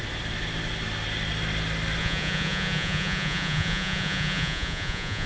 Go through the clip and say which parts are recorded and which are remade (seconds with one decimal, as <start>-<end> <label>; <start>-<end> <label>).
0.0-2.0 recorded; 2.0-5.3 remade